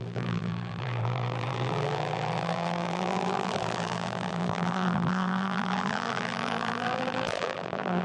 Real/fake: fake